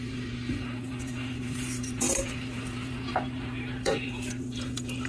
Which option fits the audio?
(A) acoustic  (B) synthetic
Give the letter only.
B